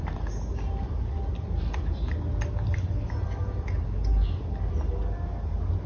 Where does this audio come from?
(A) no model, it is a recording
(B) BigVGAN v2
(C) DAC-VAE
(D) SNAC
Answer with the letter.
A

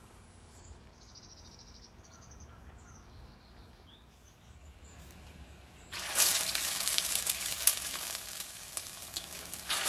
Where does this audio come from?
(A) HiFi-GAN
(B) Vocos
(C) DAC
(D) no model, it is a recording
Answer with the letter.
C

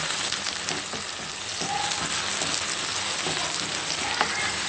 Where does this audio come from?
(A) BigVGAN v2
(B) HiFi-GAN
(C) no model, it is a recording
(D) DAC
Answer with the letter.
C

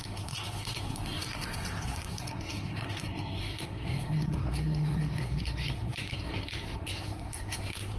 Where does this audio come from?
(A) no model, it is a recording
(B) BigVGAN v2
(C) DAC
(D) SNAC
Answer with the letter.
D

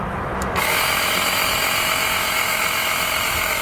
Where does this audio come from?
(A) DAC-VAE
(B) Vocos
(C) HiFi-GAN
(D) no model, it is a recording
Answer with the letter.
A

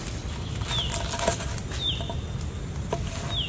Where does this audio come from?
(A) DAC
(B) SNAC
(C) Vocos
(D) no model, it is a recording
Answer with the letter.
D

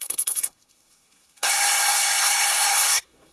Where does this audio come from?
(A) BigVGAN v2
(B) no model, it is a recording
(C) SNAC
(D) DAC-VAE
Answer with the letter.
C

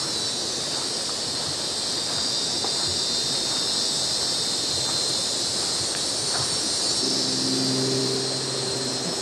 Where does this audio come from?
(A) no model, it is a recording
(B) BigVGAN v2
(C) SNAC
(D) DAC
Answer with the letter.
A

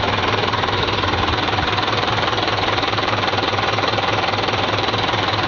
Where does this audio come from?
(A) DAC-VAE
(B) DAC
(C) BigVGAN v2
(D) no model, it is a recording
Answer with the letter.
C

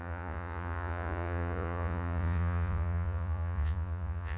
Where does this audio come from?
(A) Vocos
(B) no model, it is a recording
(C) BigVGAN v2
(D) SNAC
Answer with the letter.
A